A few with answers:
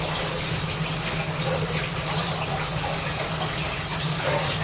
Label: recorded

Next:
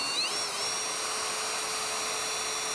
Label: recorded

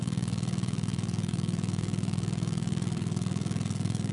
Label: remade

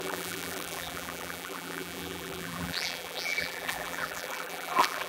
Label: remade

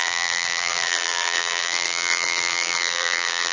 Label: remade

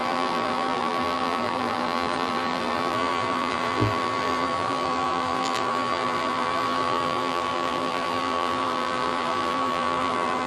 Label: remade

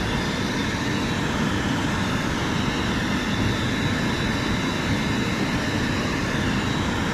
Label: recorded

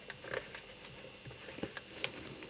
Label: remade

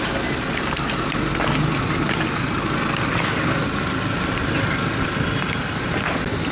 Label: recorded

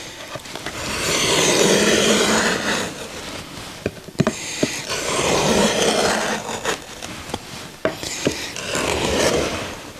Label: remade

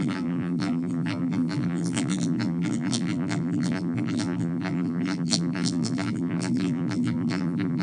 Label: remade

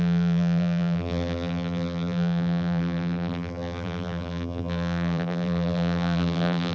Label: remade